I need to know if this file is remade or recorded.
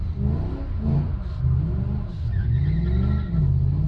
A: recorded